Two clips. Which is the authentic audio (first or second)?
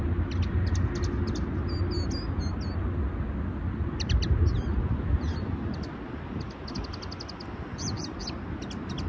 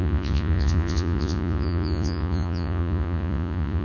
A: first